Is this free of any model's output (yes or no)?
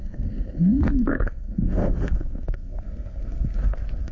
no